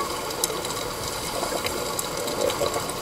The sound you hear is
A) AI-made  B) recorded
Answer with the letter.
B